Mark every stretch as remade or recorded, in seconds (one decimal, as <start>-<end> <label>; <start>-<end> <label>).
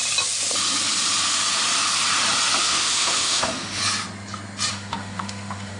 0.0-2.6 recorded; 2.6-3.8 remade; 3.8-4.7 recorded; 4.7-5.8 remade